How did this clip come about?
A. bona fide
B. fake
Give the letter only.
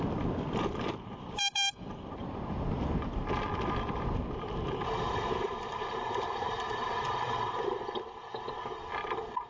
B